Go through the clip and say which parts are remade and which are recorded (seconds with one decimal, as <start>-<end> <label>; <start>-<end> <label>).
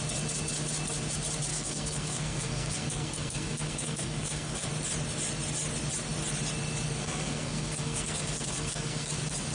0.0-1.5 recorded; 1.5-4.7 remade; 4.7-7.0 recorded; 7.0-9.1 remade; 9.1-9.5 recorded